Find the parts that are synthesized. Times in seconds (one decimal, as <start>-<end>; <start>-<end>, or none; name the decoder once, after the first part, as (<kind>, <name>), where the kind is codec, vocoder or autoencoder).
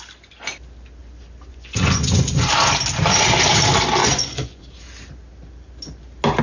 1.5-2.5 (vocoder, Vocos); 4.0-4.6